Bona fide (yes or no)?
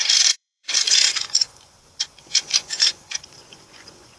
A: no